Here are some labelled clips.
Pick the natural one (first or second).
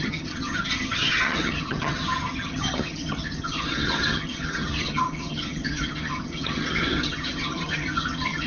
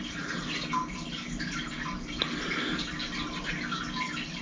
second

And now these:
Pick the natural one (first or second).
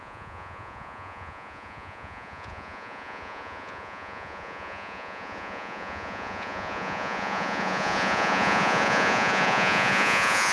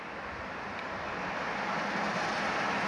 second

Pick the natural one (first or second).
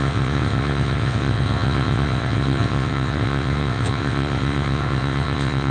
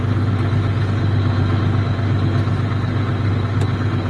second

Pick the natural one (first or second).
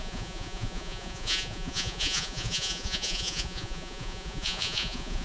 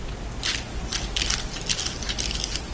second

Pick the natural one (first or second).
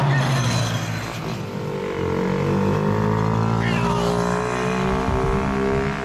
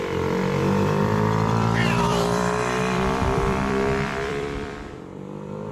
first